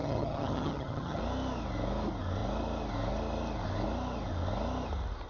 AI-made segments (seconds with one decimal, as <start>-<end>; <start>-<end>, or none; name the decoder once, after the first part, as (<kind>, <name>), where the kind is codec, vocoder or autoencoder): 0.0-1.2 (vocoder, HiFi-GAN)